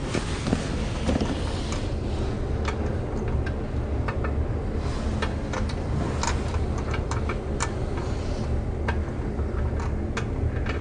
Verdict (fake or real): real